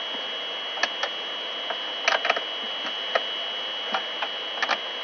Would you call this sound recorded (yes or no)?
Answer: yes